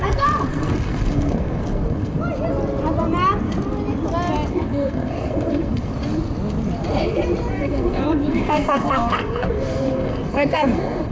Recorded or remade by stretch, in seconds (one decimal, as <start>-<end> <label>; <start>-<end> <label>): 0.0-2.2 remade; 2.2-4.5 recorded; 4.5-5.9 remade; 5.9-7.5 recorded; 7.5-11.1 remade